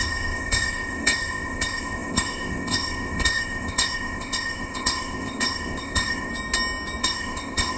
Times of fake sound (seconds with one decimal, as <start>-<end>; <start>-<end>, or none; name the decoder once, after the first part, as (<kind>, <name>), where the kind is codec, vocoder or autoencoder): 0.0-6.3 (codec, ZipCodec); 7.0-7.8